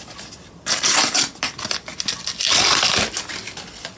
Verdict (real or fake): real